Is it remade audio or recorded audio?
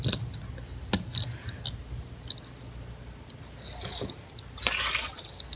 recorded